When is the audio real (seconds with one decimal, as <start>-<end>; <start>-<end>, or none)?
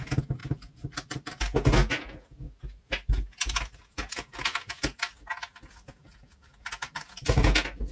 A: 0.0-7.9